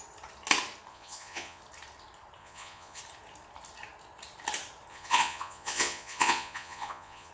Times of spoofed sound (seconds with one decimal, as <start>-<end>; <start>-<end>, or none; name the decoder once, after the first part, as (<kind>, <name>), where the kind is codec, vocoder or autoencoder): 0.9-1.6 (vocoder, Vocos); 2.4-3.0; 4.9-7.3